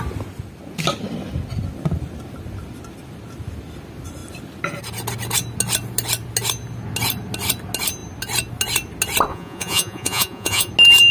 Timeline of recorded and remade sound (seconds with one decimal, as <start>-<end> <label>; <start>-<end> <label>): 0.0-9.3 recorded; 9.3-10.7 remade; 10.7-11.1 recorded